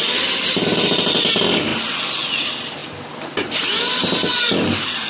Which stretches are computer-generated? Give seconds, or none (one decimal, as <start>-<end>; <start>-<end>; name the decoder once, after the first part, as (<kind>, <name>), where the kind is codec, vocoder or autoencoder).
none